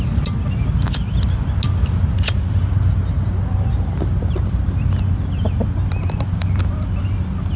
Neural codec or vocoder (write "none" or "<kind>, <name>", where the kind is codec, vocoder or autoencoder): none